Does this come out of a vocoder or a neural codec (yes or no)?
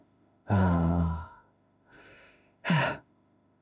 yes